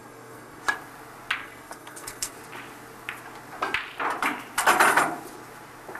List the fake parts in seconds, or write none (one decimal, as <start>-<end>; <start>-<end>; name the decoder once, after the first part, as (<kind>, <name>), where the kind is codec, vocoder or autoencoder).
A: 0.0-0.6 (codec, SNAC); 1.4-2.3